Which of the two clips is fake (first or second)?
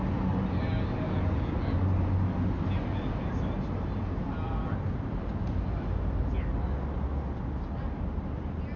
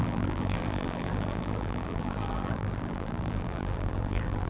second